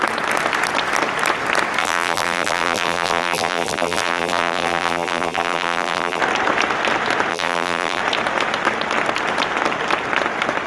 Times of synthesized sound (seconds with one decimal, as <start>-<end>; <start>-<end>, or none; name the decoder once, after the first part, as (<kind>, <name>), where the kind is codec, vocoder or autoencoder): 1.8-6.2 (vocoder, BigVGAN v2); 7.3-8.0